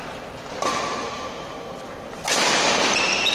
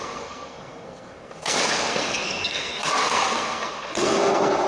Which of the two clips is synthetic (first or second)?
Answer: second